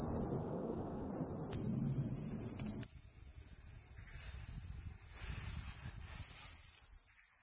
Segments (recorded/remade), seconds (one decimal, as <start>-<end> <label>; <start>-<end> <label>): 0.0-0.4 recorded; 0.4-1.1 remade; 1.1-7.4 recorded